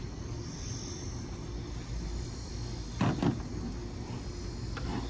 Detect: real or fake real